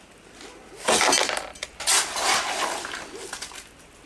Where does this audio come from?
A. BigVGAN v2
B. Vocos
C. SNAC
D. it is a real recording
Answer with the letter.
D